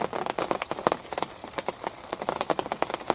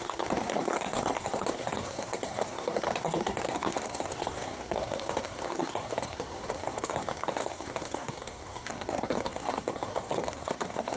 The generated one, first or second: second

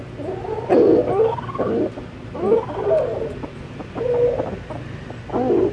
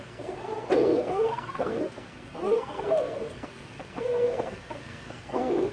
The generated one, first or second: second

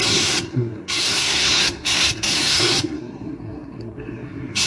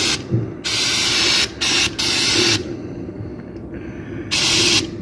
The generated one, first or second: first